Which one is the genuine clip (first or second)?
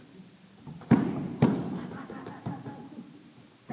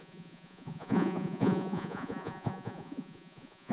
first